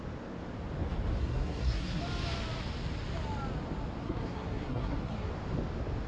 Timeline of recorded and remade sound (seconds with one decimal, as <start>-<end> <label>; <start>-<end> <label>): 0.0-1.2 recorded; 1.2-2.0 remade; 2.0-4.0 recorded; 4.0-5.3 remade; 5.3-6.1 recorded